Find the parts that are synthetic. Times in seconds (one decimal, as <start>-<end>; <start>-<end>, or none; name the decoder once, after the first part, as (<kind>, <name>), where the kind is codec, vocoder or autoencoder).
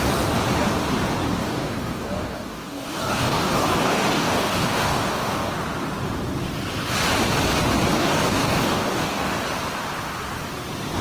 1.4-5.5 (codec, DAC); 8.0-9.3